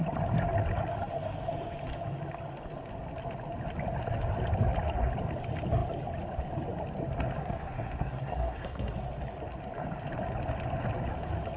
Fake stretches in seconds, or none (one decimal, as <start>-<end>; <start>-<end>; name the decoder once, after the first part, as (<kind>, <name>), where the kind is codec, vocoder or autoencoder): 7.4-8.9 (codec, SNAC)